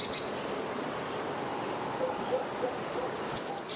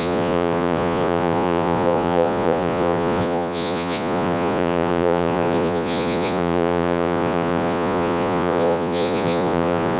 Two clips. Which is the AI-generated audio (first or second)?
second